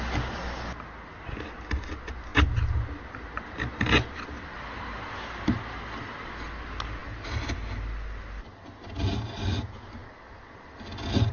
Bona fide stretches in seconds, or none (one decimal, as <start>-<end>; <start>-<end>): 0.0-11.3